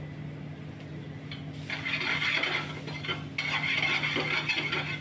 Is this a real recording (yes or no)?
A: yes